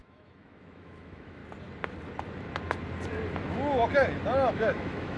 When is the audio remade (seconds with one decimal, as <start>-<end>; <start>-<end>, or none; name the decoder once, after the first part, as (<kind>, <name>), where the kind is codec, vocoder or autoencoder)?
0.0-1.4 (autoencoder, DAC-VAE); 4.5-5.2